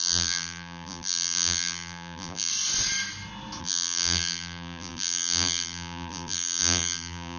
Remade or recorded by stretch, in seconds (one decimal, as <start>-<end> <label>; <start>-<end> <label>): 0.0-2.5 remade; 2.5-3.6 recorded; 3.6-7.4 remade